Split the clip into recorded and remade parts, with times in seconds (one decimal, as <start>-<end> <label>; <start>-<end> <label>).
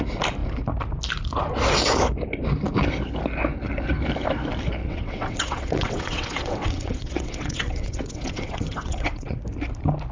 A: 0.0-4.8 recorded; 4.8-9.4 remade; 9.4-10.1 recorded